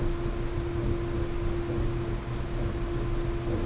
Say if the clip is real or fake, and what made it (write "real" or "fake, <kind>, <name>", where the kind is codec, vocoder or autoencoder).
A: real